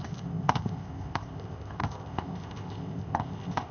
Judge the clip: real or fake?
fake